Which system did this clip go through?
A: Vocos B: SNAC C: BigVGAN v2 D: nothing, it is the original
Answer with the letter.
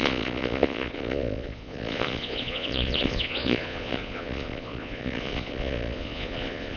A